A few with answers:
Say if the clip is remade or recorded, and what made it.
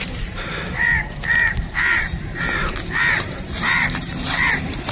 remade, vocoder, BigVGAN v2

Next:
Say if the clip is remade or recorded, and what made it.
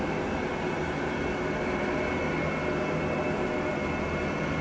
recorded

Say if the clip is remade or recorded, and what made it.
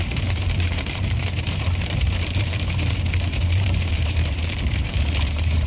remade, vocoder, BigVGAN v2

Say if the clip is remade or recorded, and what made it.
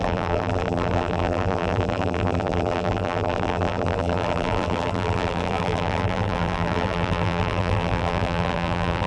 remade, vocoder, BigVGAN v2